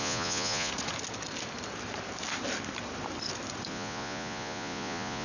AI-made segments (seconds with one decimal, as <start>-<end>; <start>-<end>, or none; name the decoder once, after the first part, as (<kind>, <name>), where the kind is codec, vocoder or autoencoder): 0.0-0.7 (vocoder, Vocos); 3.7-5.2